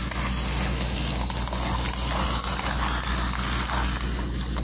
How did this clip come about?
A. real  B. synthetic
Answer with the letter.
A